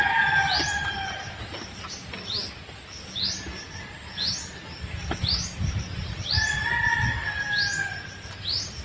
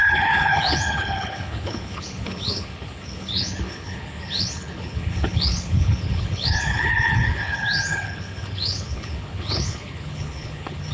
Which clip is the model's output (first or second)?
second